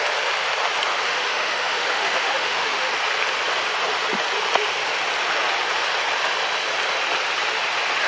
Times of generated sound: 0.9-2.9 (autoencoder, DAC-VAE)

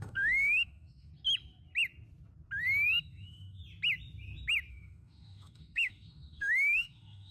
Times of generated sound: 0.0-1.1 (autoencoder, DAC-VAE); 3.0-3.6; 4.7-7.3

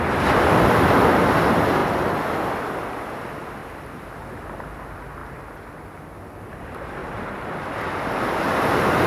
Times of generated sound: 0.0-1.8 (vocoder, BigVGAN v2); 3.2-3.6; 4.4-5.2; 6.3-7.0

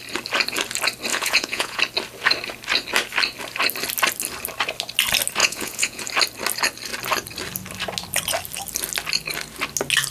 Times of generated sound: 1.1-1.8 (vocoder, Vocos); 5.4-6.0